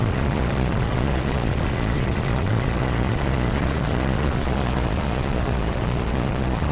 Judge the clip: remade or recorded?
remade